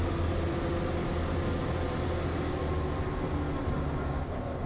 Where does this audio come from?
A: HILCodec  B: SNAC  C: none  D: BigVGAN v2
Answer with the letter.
C